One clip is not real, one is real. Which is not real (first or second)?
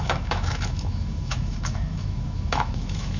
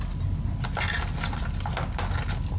first